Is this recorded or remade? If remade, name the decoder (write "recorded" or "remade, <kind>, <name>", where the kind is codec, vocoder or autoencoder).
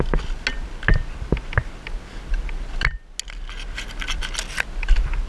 recorded